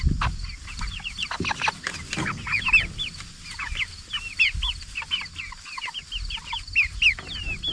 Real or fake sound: real